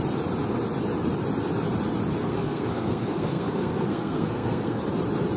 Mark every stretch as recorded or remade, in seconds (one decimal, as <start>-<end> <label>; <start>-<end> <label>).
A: 0.0-2.2 recorded; 2.2-4.8 remade; 4.8-5.4 recorded

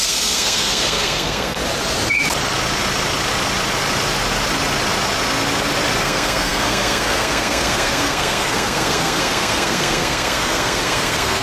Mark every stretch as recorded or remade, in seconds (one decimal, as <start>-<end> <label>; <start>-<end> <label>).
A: 0.0-1.6 remade; 1.6-6.0 recorded; 6.0-11.4 remade

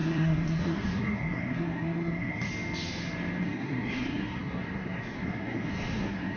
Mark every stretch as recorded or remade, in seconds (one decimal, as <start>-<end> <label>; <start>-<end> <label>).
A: 0.0-2.5 remade; 2.5-3.4 recorded; 3.4-6.4 remade

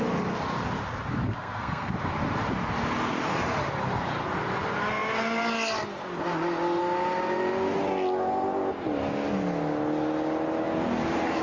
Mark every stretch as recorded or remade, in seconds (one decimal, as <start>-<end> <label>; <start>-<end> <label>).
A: 0.0-1.2 recorded; 1.2-1.9 remade; 1.9-11.4 recorded

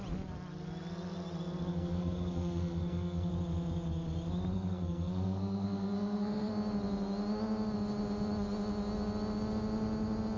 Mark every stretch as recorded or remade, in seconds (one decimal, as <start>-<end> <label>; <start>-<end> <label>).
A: 0.0-1.7 recorded; 1.7-3.3 remade; 3.3-4.5 recorded; 4.5-6.5 remade; 6.5-10.4 recorded

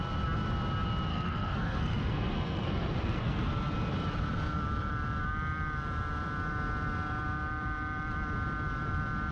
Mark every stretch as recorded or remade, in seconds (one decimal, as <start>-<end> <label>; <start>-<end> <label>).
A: 0.0-1.1 recorded; 1.1-3.5 remade; 3.5-9.3 recorded

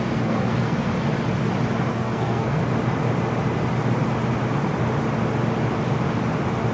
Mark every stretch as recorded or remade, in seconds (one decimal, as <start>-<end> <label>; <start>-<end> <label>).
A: 0.0-0.9 remade; 0.9-1.9 recorded; 1.9-2.6 remade; 2.6-6.7 recorded

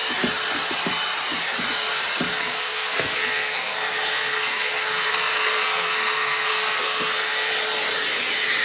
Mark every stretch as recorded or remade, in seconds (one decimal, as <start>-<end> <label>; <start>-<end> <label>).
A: 0.0-2.3 recorded; 2.3-7.5 remade; 7.5-8.6 recorded